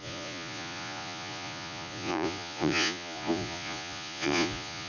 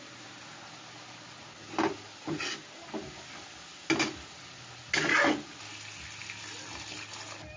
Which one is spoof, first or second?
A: first